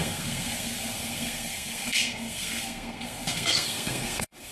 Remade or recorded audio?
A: remade